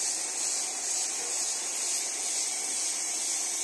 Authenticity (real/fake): real